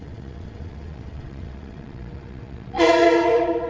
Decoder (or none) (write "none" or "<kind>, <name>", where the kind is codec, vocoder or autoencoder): vocoder, WaveNeXt